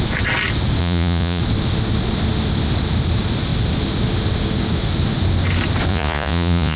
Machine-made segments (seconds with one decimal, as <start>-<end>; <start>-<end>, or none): 0.8-1.4; 5.9-6.8

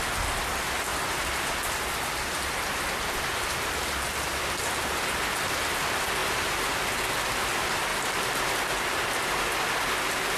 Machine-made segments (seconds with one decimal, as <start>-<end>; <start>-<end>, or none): 6.2-7.3; 7.9-9.4

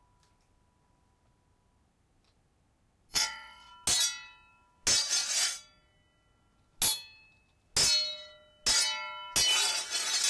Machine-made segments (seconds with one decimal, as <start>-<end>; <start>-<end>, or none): 3.1-3.7

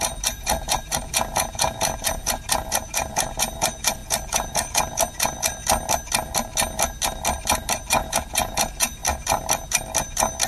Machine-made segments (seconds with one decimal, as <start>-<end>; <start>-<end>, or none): 0.0-5.6; 7.9-9.0

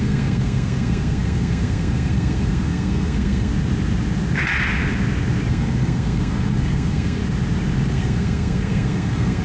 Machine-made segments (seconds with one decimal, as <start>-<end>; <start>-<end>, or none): 0.0-3.5; 5.5-7.2; 7.9-9.4

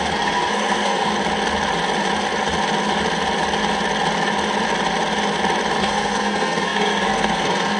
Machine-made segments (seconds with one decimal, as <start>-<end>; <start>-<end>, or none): 0.0-1.1; 5.8-7.8